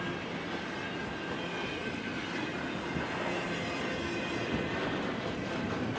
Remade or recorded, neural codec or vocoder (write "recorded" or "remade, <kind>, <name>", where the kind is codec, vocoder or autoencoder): recorded